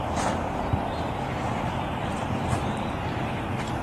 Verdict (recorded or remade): remade